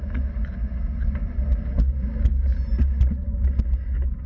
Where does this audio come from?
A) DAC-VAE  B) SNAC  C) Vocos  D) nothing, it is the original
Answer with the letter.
D